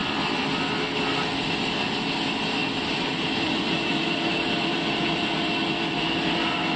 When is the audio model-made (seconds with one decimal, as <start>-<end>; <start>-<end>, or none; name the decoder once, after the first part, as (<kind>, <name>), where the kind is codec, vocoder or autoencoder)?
2.6-6.8 (vocoder, BigVGAN v2)